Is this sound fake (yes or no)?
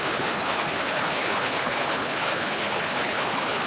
yes